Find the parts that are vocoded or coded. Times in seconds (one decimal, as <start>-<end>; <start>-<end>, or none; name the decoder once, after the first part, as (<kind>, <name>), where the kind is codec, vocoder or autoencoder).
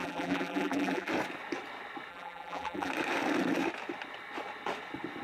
0.0-1.1 (vocoder, BigVGAN v2); 2.1-2.9